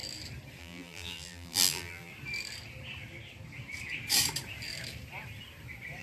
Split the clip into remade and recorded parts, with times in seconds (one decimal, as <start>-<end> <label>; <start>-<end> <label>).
0.0-0.6 recorded; 0.6-2.1 remade; 2.1-6.0 recorded